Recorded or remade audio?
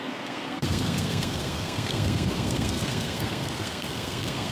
remade